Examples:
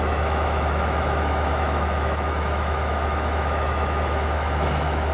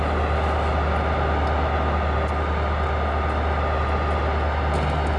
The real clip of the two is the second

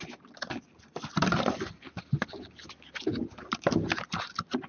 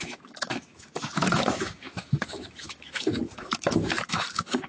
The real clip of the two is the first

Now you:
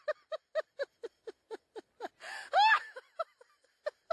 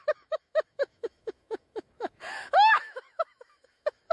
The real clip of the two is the first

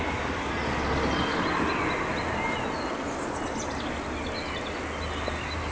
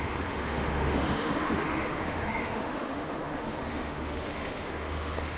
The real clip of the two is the first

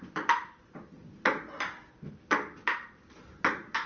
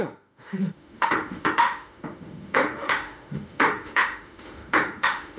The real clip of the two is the first